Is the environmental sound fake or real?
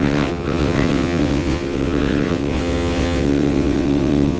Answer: fake